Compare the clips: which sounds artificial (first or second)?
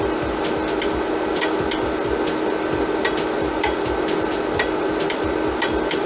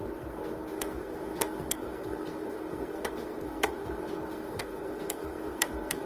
second